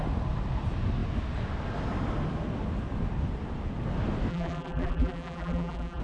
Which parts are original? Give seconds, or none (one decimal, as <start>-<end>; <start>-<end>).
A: 0.0-4.3